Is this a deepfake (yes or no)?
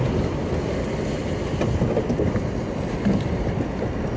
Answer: no